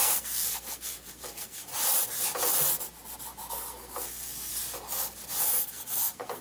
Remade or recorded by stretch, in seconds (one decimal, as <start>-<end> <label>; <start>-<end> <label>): 0.0-1.7 remade; 1.7-3.5 recorded; 3.5-4.5 remade; 4.5-5.4 recorded; 5.4-6.4 remade